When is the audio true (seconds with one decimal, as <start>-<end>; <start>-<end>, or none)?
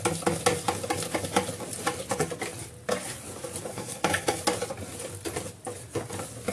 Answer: 0.0-3.7; 4.4-6.5